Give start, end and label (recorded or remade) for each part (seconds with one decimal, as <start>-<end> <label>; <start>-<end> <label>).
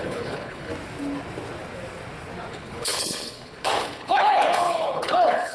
0.0-0.7 remade; 0.7-2.5 recorded; 2.5-5.5 remade